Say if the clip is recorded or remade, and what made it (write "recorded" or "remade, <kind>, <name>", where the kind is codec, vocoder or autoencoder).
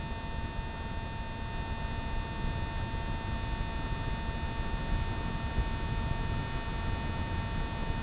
recorded